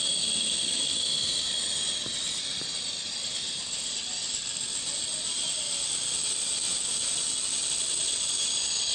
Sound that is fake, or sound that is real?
real